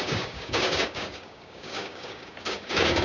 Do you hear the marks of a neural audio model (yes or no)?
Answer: yes